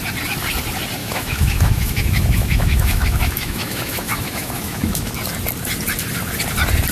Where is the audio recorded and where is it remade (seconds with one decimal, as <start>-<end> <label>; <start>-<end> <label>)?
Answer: 0.0-1.0 recorded; 1.0-5.1 remade; 5.1-6.9 recorded